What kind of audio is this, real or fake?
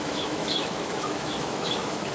fake